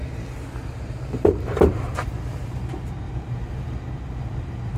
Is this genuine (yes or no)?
no